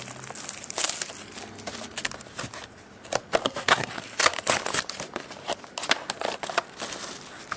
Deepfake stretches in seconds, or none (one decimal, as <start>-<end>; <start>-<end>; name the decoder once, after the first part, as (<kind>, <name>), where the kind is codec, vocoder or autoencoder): 3.4-3.9 (codec, SNAC)